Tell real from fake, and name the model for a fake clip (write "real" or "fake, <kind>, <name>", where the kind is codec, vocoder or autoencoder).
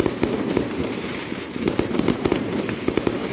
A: fake, vocoder, BigVGAN v2